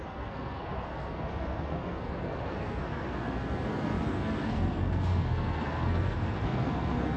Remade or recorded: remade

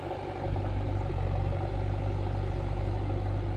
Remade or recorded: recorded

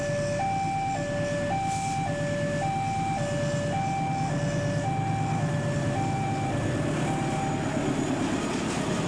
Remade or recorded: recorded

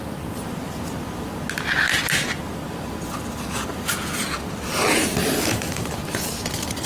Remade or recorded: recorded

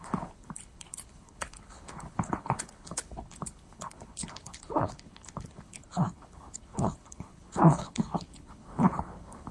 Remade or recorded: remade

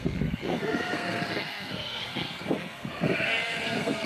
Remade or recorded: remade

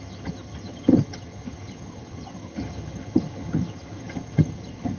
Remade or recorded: remade